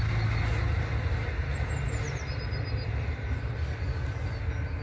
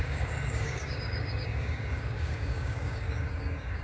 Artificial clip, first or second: second